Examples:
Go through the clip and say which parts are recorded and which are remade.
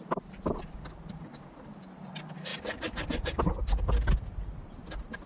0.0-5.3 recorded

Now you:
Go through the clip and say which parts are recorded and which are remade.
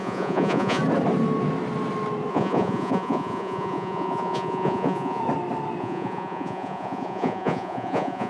0.0-0.8 remade; 0.8-2.3 recorded; 2.3-5.2 remade; 5.2-5.8 recorded; 5.8-8.3 remade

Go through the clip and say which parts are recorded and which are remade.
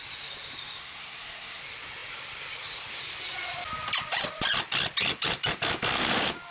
0.0-0.8 recorded; 0.8-1.6 remade; 1.6-6.5 recorded